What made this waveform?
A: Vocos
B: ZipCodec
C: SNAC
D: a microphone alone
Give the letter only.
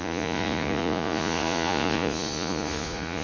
A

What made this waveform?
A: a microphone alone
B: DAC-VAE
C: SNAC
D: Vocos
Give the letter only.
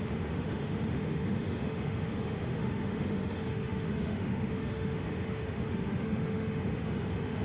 B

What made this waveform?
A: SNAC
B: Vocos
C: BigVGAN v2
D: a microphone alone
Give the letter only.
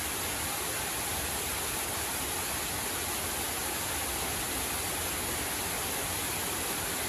D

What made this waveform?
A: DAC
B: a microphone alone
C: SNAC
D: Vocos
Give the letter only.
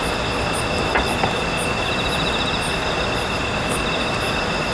B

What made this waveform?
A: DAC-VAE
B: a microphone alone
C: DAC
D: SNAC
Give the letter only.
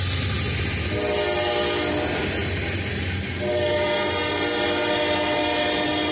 B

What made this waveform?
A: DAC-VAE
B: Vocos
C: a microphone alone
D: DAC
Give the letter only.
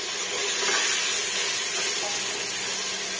C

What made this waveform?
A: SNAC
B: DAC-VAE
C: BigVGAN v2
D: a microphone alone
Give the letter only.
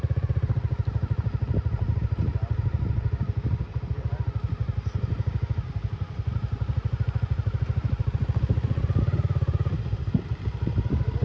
D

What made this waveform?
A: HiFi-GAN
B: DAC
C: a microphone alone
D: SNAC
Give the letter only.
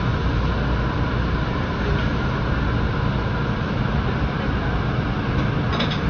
C